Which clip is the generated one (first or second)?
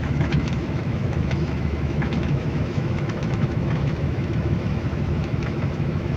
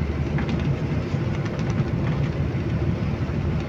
first